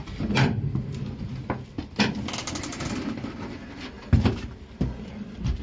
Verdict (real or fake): real